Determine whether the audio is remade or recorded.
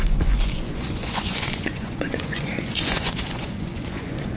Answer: remade